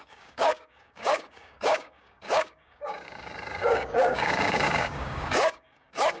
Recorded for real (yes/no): no